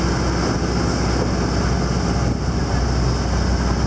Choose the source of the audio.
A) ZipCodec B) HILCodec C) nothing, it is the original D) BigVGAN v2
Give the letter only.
C